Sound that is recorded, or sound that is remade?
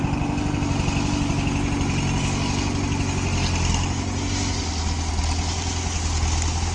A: recorded